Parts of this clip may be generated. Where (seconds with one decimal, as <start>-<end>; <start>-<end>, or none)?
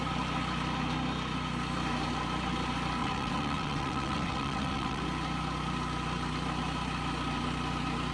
3.0-5.0